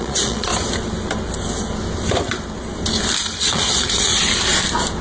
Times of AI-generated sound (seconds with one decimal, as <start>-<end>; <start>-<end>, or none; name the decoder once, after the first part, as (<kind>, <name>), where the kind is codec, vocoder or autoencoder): 0.0-0.5 (vocoder, Vocos); 3.4-4.1

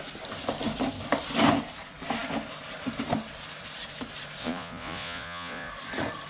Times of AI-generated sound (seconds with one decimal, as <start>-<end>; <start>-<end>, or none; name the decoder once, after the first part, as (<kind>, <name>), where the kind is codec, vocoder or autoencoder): 4.4-5.7 (vocoder, Vocos)

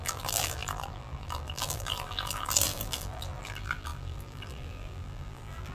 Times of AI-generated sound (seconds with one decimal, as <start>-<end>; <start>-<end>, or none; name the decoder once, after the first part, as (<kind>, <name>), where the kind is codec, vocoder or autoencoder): 0.0-5.7 (vocoder, BigVGAN v2)

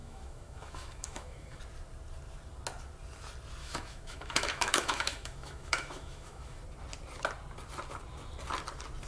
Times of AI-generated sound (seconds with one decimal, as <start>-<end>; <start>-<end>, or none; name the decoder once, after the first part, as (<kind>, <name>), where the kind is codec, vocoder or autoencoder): 0.0-1.6 (autoencoder, DAC-VAE); 3.6-6.6

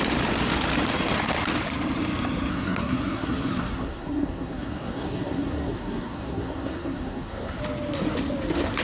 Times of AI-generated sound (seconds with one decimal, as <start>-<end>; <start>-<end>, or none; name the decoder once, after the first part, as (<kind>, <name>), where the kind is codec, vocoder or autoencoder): 2.5-7.6 (codec, SNAC)

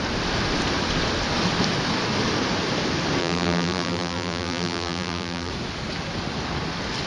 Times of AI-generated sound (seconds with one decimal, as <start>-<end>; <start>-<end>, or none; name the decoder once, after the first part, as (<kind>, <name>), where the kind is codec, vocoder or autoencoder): 3.2-5.5 (vocoder, BigVGAN v2)

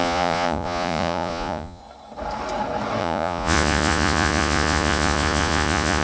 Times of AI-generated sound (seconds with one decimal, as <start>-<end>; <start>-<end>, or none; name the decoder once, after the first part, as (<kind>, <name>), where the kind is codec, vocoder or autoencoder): 0.0-1.8 (vocoder, Vocos); 3.0-6.0